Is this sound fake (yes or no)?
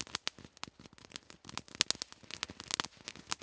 no